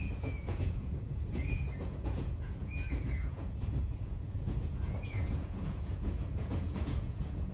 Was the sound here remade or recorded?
remade